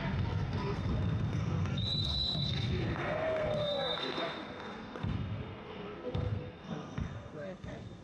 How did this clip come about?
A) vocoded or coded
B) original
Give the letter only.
A